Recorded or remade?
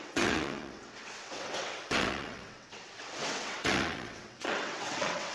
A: remade